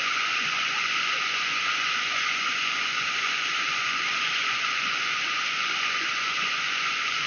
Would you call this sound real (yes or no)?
no